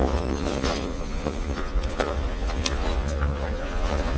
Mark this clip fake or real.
fake